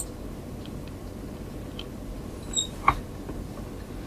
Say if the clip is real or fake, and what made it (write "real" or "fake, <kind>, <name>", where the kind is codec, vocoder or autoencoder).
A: real